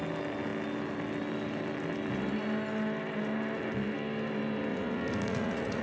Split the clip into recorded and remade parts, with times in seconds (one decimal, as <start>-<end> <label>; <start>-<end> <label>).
0.0-4.7 recorded; 4.7-5.8 remade